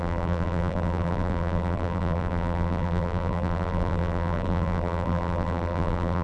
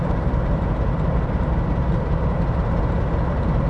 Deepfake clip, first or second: first